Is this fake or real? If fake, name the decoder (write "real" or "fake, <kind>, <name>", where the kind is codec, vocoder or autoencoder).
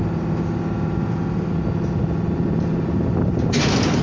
real